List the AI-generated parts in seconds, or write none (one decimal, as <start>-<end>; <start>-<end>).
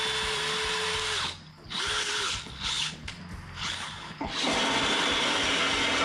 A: 1.5-3.2; 3.6-4.3